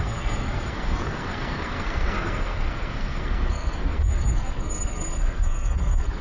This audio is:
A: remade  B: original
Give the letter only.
A